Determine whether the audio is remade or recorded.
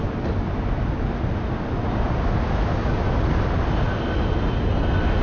recorded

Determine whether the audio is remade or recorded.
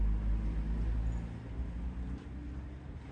recorded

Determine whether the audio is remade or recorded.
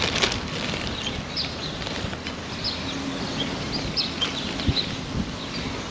recorded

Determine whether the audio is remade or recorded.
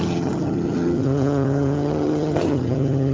remade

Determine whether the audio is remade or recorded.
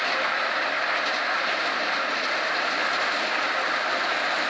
recorded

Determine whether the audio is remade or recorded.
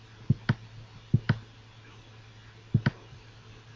recorded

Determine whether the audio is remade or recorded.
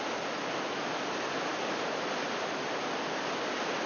recorded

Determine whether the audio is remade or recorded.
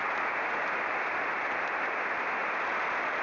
recorded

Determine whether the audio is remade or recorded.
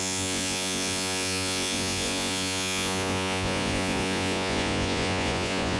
remade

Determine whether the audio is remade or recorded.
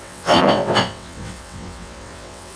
remade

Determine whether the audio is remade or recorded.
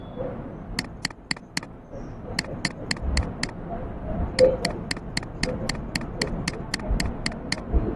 recorded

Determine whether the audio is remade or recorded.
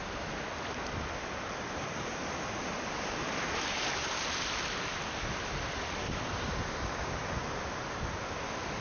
recorded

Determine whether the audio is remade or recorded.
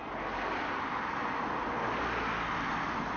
recorded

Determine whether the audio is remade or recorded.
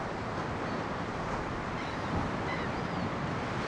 recorded